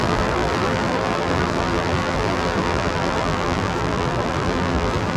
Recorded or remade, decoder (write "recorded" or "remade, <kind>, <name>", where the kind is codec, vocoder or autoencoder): remade, vocoder, BigVGAN v2